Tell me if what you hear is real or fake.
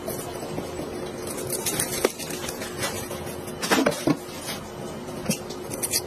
real